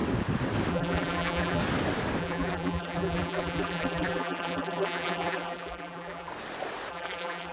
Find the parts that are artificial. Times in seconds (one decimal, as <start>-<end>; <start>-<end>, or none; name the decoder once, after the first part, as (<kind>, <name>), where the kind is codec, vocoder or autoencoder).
0.7-1.6 (vocoder, BigVGAN v2); 2.2-6.3; 6.9-7.5